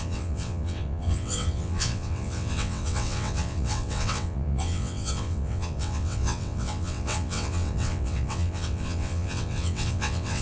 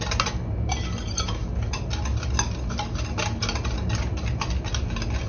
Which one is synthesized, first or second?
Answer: first